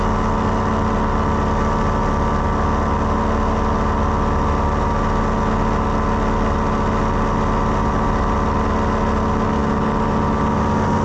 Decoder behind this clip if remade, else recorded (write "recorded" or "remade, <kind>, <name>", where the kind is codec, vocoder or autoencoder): recorded